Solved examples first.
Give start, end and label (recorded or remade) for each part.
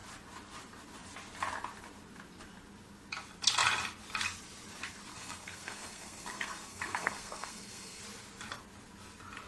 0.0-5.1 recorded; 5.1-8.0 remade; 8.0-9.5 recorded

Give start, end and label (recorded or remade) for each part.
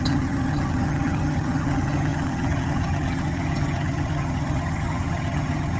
0.0-5.8 remade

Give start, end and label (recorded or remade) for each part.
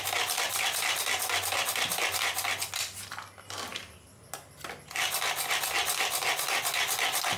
0.0-7.4 recorded